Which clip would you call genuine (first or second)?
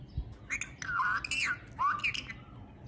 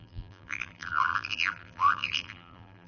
first